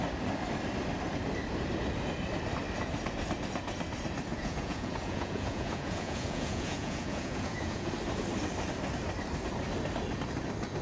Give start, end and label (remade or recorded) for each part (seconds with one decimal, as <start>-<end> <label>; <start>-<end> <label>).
0.0-4.3 recorded; 4.3-7.9 remade; 7.9-10.8 recorded